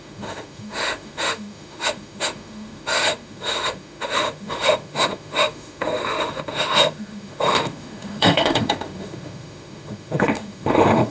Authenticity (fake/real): fake